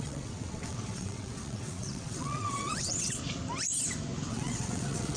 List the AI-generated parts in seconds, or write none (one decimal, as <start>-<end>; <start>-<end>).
0.0-3.2; 4.3-5.2